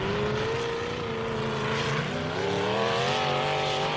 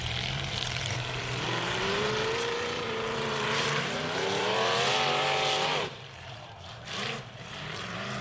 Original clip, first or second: first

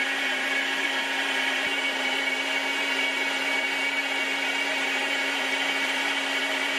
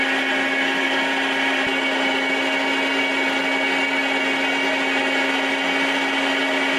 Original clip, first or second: second